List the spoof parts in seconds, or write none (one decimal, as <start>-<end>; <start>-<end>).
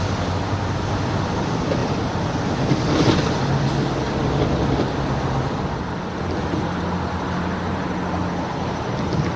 1.8-2.8